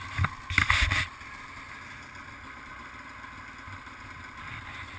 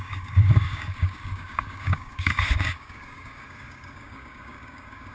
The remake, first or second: second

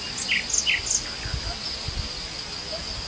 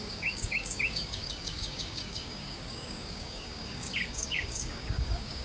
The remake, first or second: second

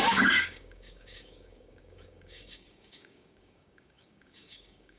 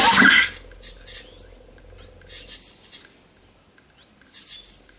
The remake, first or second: first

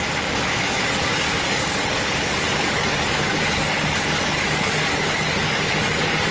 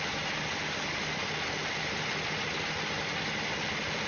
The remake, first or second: first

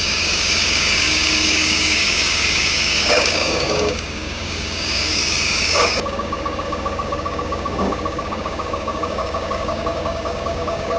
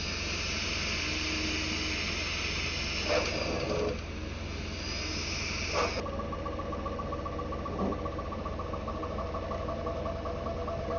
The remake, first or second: first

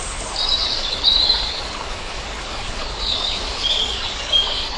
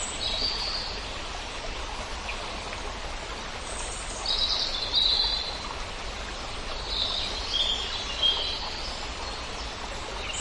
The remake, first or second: first